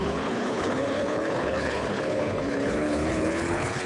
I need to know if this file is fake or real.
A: fake